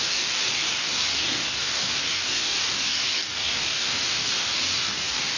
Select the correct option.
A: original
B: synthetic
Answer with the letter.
B